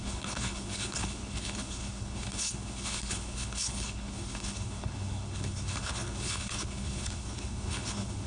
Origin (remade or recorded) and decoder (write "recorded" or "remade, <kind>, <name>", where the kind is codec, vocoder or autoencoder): remade, codec, HILCodec